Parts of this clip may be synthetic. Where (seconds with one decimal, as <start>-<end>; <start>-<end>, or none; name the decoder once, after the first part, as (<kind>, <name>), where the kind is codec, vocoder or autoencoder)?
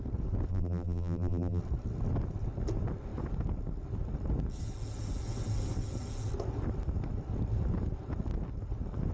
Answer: 0.5-1.6 (vocoder, BigVGAN v2)